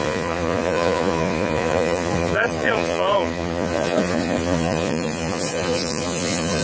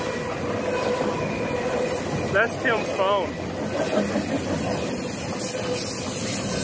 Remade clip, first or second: first